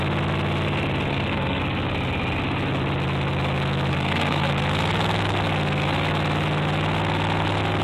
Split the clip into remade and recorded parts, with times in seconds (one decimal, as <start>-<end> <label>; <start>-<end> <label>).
0.0-1.1 recorded; 1.1-1.6 remade; 1.6-3.9 recorded; 3.9-4.5 remade; 4.5-7.8 recorded